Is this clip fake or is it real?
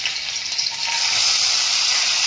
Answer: real